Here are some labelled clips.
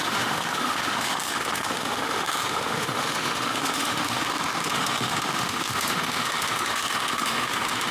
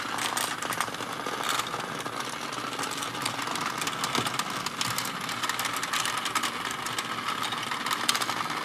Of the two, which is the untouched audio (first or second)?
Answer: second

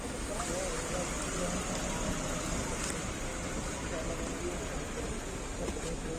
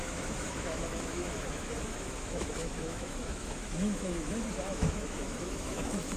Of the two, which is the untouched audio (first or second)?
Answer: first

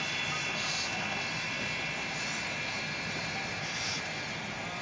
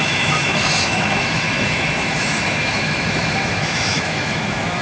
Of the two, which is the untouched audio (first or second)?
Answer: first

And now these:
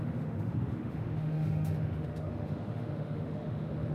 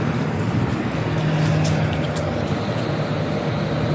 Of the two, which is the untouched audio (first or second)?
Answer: second